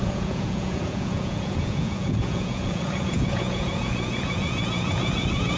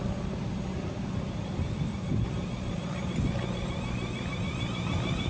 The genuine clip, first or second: second